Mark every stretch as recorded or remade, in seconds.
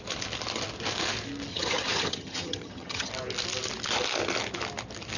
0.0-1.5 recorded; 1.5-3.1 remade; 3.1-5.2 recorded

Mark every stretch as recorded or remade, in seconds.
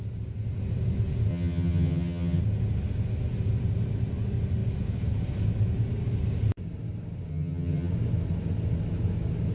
0.0-1.3 recorded; 1.3-2.4 remade; 2.4-7.3 recorded; 7.3-7.9 remade; 7.9-9.5 recorded